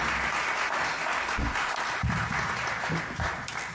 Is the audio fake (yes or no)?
no